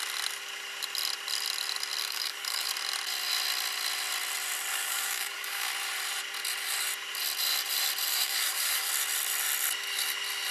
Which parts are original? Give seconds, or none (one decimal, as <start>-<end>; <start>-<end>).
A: 0.0-2.0; 2.7-4.7; 5.7-8.1; 8.9-10.5